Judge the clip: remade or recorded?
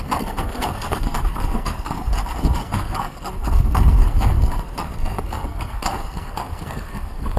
remade